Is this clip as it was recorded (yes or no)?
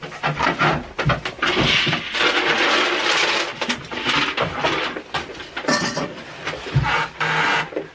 yes